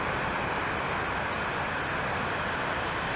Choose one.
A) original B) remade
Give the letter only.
A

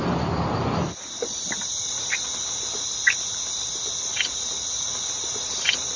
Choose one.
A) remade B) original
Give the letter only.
B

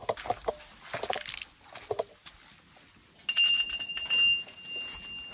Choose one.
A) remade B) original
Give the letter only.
B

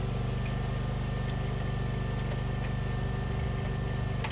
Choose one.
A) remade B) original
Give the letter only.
B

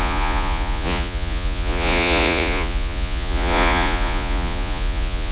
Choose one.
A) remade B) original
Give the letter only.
A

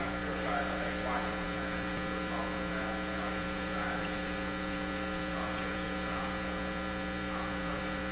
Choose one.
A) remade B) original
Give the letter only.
A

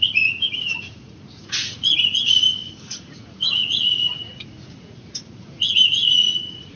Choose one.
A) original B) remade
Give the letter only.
B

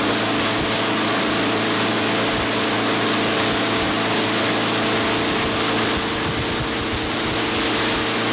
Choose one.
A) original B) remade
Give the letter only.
A